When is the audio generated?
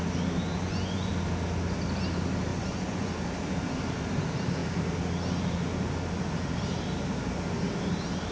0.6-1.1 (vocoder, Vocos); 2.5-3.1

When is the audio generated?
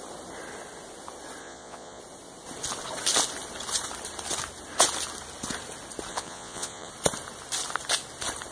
1.4-2.0 (vocoder, Vocos); 6.1-6.9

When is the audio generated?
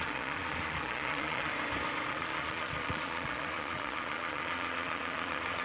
0.0-1.5 (vocoder, Vocos); 2.1-5.6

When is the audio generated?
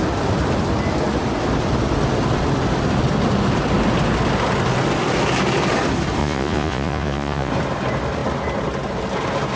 6.2-7.5 (vocoder, Vocos)